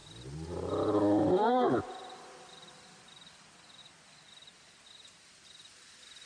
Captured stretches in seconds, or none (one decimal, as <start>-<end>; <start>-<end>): 0.0-6.3